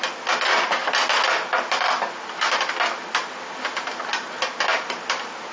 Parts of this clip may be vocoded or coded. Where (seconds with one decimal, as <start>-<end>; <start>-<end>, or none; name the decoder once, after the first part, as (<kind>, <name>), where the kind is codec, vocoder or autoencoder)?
none